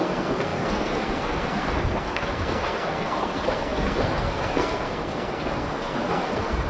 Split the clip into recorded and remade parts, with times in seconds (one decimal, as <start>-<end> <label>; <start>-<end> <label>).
0.0-6.7 remade